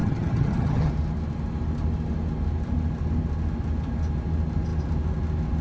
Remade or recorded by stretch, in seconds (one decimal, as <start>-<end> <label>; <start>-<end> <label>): 0.0-0.9 remade; 0.9-5.6 recorded

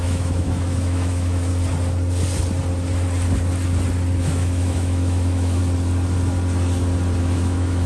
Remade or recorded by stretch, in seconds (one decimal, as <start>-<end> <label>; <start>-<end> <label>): 0.0-1.5 remade; 1.5-4.2 recorded; 4.2-5.6 remade; 5.6-7.2 recorded; 7.2-7.9 remade

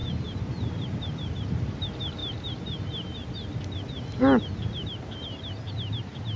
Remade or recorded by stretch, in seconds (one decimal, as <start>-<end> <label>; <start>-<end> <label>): 0.0-6.4 recorded

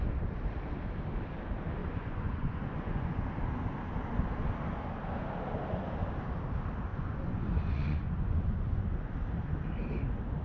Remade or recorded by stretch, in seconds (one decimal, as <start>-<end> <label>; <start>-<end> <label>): 0.0-1.8 recorded; 1.8-3.2 remade; 3.2-6.9 recorded; 6.9-8.8 remade; 8.8-10.4 recorded

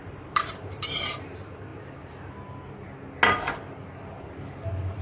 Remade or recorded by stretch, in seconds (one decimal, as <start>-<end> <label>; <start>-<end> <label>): 0.0-1.7 remade; 1.7-5.0 recorded

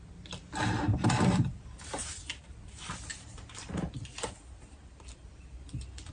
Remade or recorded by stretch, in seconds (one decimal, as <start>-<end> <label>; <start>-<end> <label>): 0.0-2.3 recorded; 2.3-6.1 remade